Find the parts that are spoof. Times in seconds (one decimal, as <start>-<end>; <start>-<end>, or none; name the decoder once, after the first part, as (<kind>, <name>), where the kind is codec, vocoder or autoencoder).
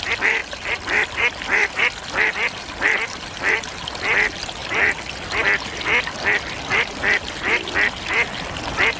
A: 0.4-3.5 (vocoder, BigVGAN v2)